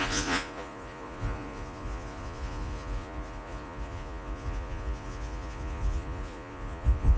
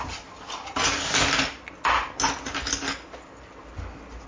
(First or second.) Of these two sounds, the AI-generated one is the first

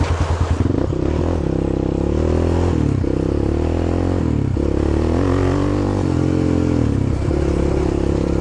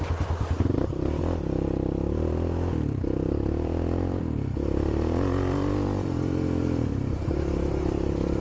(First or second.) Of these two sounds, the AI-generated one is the second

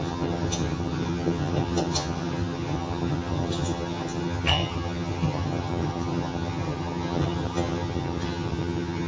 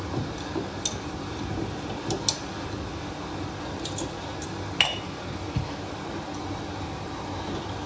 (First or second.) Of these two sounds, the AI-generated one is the first